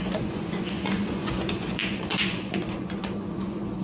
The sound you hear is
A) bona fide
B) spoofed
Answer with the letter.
B